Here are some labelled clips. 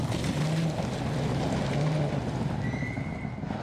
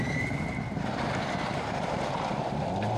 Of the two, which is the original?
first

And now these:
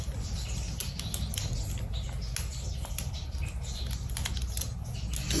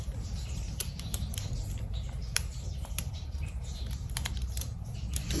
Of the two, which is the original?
first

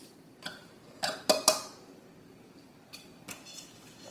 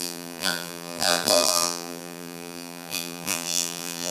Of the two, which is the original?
first